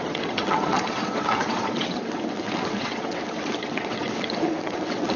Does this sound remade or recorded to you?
remade